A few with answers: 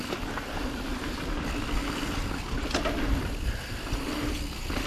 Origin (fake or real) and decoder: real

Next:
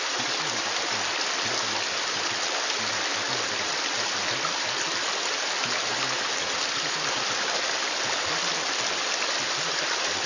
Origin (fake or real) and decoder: real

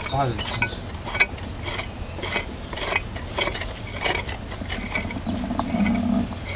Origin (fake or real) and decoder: real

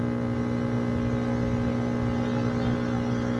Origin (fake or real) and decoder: real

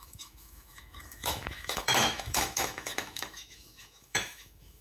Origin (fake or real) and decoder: fake, autoencoder, DAC-VAE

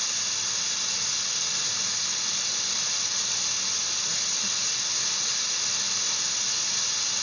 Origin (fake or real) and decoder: real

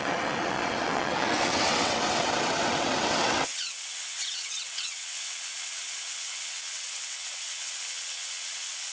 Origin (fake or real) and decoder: fake, vocoder, WaveNeXt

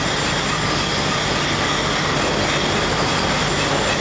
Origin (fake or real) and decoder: real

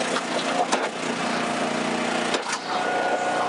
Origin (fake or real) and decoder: real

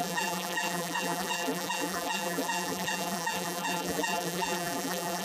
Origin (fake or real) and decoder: fake, vocoder, BigVGAN v2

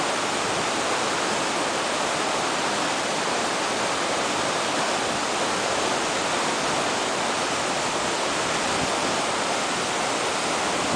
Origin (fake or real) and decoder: real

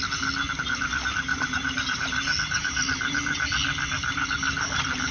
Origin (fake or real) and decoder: real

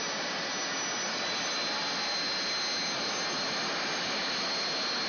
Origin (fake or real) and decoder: real